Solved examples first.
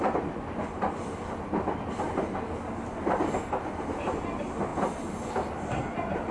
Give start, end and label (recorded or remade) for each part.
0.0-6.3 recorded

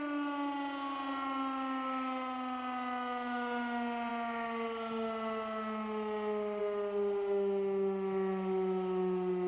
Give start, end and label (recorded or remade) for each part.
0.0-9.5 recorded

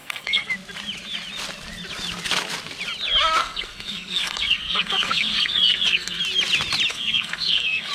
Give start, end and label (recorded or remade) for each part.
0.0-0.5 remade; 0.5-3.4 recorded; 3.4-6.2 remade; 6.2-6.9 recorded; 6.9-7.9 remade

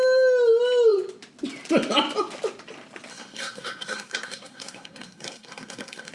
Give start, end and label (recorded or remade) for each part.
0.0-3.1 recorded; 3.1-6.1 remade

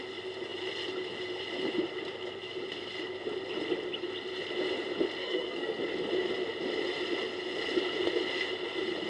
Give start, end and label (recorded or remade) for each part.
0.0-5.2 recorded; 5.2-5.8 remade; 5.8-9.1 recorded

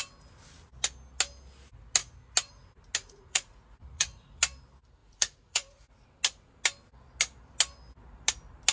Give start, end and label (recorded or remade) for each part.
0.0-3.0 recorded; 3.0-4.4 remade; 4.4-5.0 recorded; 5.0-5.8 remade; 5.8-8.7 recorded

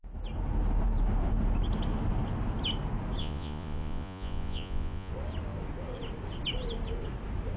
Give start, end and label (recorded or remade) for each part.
0.0-3.2 recorded; 3.2-5.1 remade; 5.1-7.6 recorded